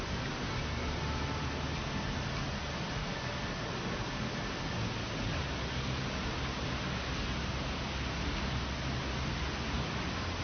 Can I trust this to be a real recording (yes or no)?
yes